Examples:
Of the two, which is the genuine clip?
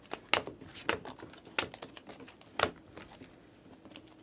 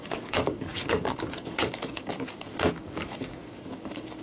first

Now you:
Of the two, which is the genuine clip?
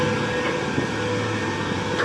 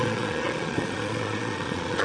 first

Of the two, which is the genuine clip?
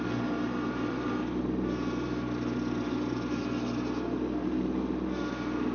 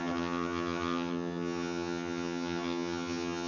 first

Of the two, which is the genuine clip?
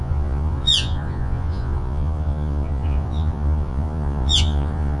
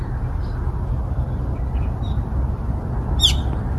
second